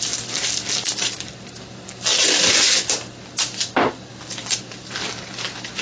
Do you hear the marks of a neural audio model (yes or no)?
no